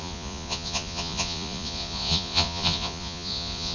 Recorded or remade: remade